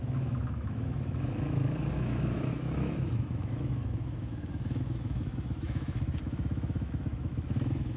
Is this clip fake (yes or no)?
yes